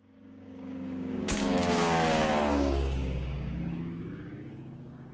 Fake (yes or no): yes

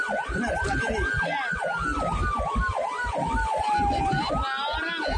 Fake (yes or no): no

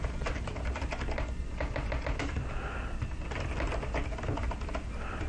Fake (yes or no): no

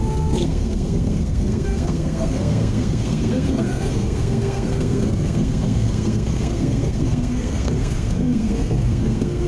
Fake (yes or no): yes